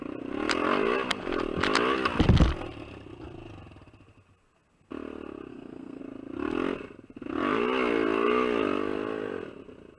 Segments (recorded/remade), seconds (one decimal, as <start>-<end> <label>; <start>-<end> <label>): 0.0-5.5 recorded; 5.5-6.0 remade; 6.0-10.0 recorded